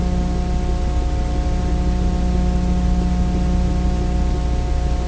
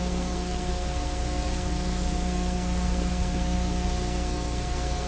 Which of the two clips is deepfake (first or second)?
second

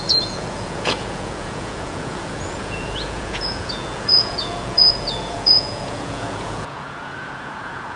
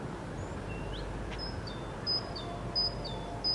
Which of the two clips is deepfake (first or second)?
first